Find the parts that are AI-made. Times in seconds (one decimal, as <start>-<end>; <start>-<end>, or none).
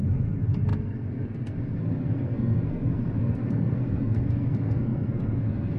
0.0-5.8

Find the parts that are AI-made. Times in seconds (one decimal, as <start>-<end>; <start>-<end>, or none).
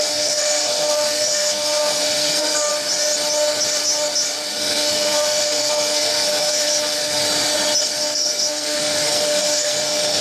0.0-2.7; 4.5-7.2; 7.8-10.2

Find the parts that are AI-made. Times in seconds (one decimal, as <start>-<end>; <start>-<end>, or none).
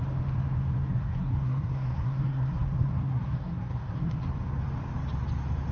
0.9-4.3